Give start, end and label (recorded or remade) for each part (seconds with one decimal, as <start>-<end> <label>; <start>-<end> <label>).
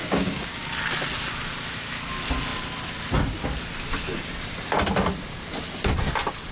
0.0-0.6 remade; 0.6-6.5 recorded